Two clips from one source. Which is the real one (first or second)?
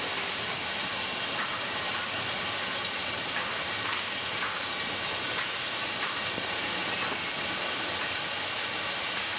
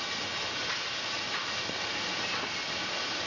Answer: second